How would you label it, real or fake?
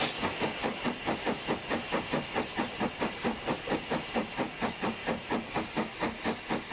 real